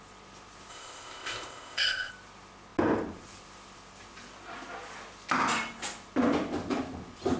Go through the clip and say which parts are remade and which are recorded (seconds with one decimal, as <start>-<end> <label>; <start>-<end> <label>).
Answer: 0.0-0.7 recorded; 0.7-2.1 remade; 2.1-7.4 recorded